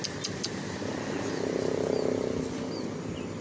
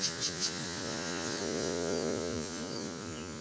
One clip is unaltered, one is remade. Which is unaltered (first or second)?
first